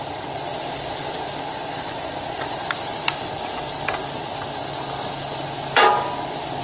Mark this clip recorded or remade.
recorded